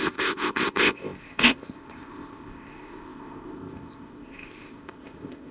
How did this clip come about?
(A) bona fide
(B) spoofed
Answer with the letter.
B